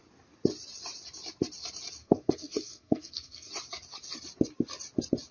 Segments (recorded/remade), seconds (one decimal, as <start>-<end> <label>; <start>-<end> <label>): 0.0-2.0 recorded; 2.0-3.5 remade; 3.5-5.3 recorded